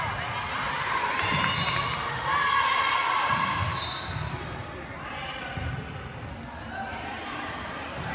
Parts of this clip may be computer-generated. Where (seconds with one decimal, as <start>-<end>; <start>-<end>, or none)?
6.9-8.1